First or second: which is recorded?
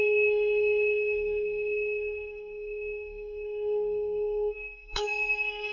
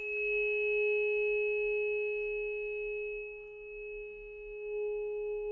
second